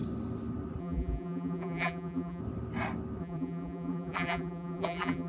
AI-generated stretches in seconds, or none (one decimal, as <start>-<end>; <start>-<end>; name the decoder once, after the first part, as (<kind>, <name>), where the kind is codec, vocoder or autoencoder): 0.8-2.4 (vocoder, BigVGAN v2); 3.2-5.3